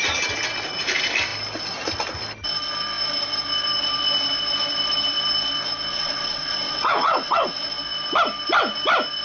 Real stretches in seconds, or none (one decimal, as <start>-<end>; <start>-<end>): 0.0-5.9; 7.6-9.2